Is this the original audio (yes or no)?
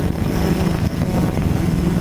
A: no